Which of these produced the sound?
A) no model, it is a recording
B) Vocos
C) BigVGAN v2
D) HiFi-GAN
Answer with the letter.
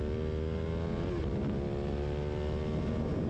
A